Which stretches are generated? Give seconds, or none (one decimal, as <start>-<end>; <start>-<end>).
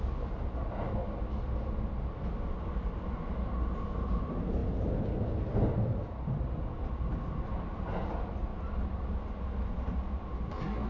none